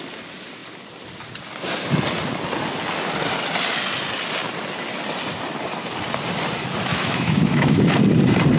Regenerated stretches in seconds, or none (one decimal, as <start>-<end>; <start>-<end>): 6.9-7.8

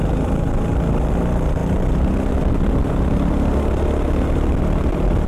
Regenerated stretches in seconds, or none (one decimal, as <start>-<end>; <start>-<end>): none

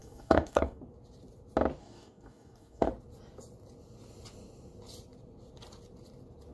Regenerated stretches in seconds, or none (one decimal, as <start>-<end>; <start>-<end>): 0.0-0.8; 1.8-2.9

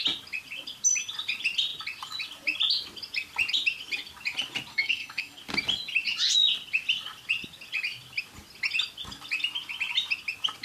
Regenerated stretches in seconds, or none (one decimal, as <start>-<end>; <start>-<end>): 4.7-5.4

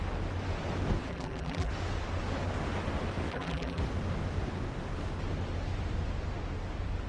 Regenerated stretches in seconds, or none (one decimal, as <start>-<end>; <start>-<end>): 1.1-1.7; 3.3-3.8